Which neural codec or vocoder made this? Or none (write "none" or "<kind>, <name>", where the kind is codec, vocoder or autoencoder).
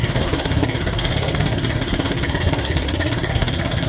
codec, SNAC